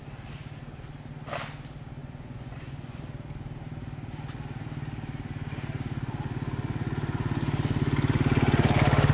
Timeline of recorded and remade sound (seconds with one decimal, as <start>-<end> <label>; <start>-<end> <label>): 0.0-2.0 recorded; 2.0-3.0 remade; 3.0-9.1 recorded